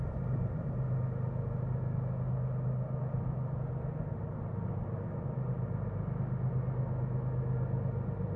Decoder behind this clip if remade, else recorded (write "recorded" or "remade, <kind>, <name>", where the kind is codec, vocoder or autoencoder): recorded